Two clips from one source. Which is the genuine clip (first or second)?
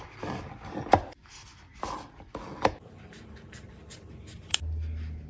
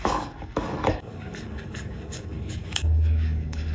first